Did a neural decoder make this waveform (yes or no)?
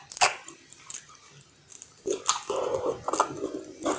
no